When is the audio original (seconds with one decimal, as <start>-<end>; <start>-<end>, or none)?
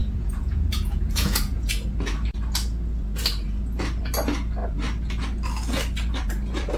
1.7-6.8